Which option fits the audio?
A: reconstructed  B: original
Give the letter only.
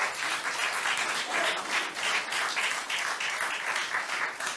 B